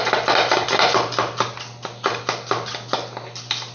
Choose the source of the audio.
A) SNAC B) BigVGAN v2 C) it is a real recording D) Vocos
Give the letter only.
C